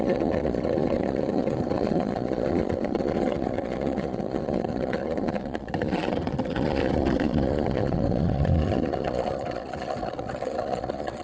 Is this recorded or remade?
remade